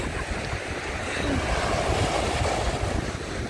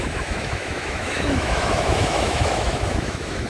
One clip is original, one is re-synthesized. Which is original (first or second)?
first